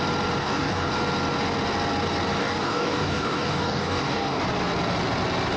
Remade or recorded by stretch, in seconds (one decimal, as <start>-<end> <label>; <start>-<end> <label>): 0.0-0.4 recorded; 0.4-0.9 remade; 0.9-2.4 recorded; 2.4-4.4 remade; 4.4-5.6 recorded